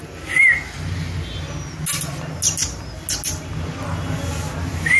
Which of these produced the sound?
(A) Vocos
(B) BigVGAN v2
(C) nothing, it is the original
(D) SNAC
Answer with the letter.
C